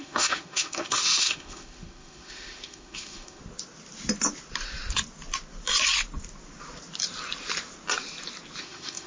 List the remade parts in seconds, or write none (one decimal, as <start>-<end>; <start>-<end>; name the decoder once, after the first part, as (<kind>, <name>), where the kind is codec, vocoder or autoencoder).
0.0-3.4 (autoencoder, DAC-VAE); 8.6-9.1